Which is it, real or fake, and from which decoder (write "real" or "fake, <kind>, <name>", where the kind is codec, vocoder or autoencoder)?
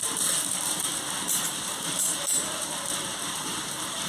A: fake, vocoder, BigVGAN v2